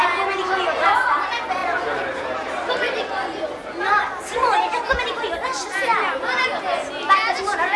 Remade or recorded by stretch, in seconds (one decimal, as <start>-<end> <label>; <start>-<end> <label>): 0.0-7.8 recorded